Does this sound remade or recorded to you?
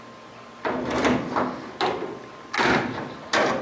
recorded